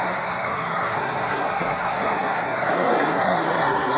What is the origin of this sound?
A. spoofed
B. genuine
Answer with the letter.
A